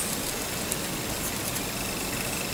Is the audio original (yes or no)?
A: yes